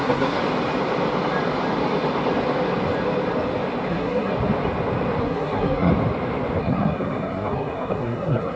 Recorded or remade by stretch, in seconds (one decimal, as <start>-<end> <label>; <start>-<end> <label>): 0.0-0.4 remade; 0.4-3.9 recorded; 3.9-4.3 remade; 4.3-5.2 recorded; 5.2-5.9 remade; 5.9-6.6 recorded; 6.6-8.6 remade